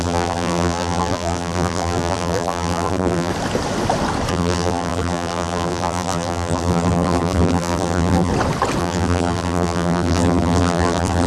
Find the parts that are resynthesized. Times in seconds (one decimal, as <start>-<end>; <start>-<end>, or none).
0.0-3.3; 4.3-8.3; 8.8-11.3